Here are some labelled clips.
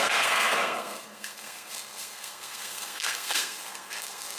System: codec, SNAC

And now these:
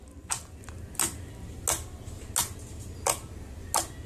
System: none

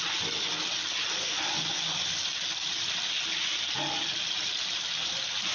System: none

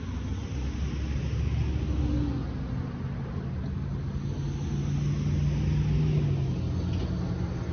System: none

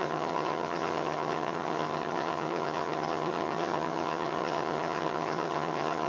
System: vocoder, HiFi-GAN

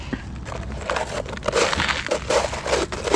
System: none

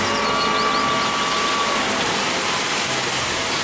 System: none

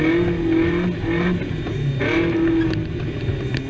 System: none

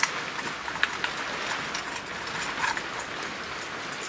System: none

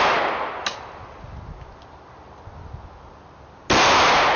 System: none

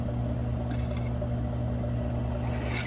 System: none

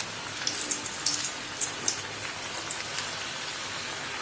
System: none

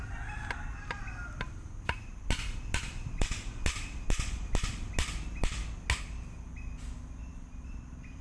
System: none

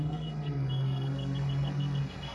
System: codec, SNAC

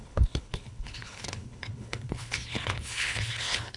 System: codec, HILCodec